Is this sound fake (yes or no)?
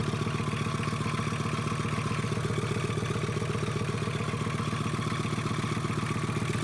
no